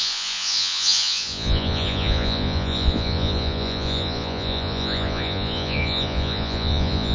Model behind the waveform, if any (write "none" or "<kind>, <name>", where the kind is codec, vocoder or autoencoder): vocoder, Vocos